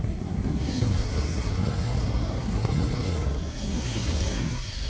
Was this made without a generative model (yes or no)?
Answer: no